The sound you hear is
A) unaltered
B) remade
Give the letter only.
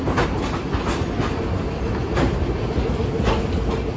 A